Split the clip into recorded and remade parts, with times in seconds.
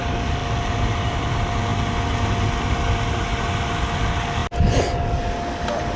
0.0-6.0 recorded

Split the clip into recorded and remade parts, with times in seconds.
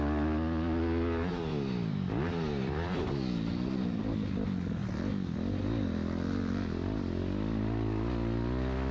0.0-1.5 recorded; 1.5-3.1 remade; 3.1-8.9 recorded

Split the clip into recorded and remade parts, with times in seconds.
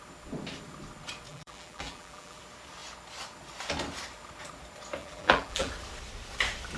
0.0-1.3 recorded; 1.3-2.4 remade; 2.4-5.0 recorded; 5.0-5.7 remade; 5.7-6.8 recorded